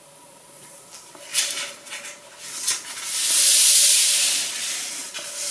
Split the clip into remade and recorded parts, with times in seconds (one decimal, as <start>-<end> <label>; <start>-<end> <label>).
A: 0.0-5.5 recorded